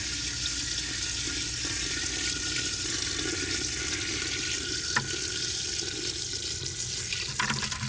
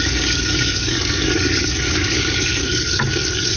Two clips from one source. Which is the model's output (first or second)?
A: second